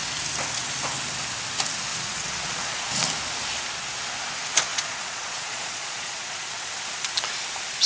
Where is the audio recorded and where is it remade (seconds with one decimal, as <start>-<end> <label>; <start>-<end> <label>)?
0.0-1.9 recorded; 1.9-2.9 remade; 2.9-4.7 recorded; 4.7-6.7 remade; 6.7-7.9 recorded